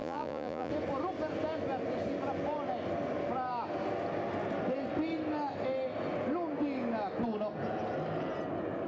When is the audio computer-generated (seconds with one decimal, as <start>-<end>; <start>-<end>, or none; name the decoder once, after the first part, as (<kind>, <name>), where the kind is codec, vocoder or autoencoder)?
0.0-0.7 (vocoder, Vocos)